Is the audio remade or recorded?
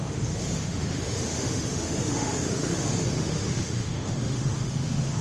remade